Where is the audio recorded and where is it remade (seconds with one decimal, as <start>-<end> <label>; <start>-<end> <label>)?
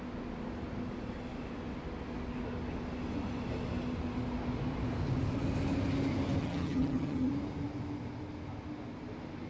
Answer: 0.0-6.4 recorded; 6.4-7.3 remade; 7.3-9.5 recorded